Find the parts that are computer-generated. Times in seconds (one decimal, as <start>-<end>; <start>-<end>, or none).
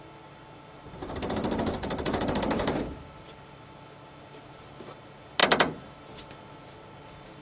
1.0-3.2